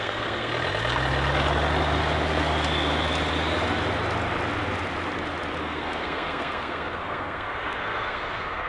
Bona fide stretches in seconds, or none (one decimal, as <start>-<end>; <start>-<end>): 0.5-5.6